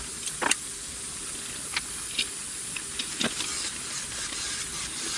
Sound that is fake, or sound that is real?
real